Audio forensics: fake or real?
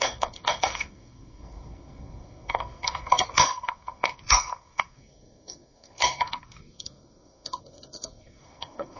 fake